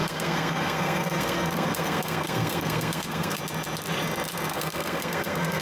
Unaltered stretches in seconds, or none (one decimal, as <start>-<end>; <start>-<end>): 3.4-4.5